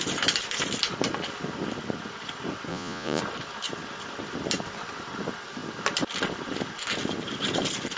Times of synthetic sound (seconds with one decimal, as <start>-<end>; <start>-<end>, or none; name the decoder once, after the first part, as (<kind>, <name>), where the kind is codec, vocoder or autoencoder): 2.7-3.2 (vocoder, Vocos)